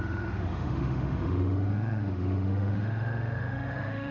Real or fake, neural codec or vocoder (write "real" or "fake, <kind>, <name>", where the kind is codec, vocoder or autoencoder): fake, autoencoder, DAC-VAE